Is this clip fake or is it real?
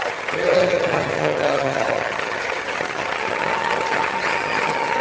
fake